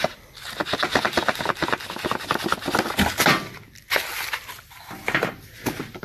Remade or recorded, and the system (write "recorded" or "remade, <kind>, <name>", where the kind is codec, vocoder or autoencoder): recorded